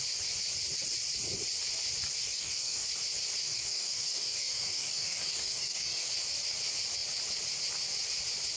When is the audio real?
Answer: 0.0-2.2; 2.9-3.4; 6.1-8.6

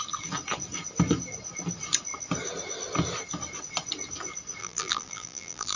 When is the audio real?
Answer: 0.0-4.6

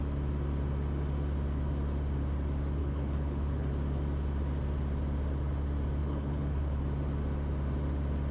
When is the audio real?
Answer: 0.0-2.8; 3.7-6.0; 6.8-8.3

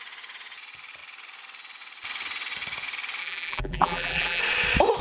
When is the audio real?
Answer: 0.0-3.2; 4.4-5.0